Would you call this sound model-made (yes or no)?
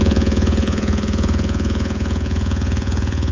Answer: yes